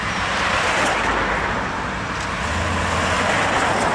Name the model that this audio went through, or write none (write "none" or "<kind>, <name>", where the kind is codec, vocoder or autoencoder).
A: none